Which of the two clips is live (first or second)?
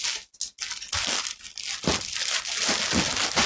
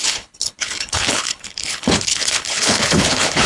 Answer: first